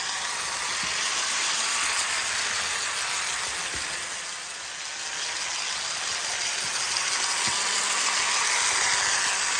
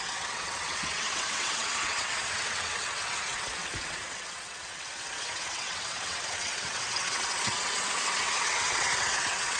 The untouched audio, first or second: first